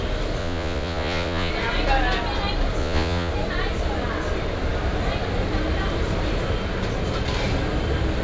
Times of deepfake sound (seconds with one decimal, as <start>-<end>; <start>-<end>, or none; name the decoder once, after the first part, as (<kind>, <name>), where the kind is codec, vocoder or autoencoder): 0.4-1.5 (vocoder, Vocos); 2.8-3.3